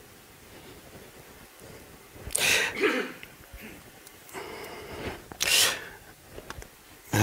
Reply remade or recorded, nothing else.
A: remade